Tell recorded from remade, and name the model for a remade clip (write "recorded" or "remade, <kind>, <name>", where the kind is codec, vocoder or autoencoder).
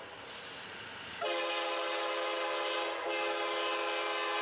recorded